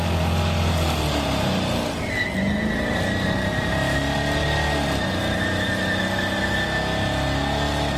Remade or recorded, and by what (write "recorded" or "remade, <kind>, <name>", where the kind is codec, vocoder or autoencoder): recorded